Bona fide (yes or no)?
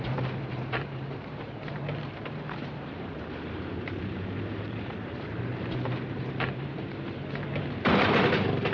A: no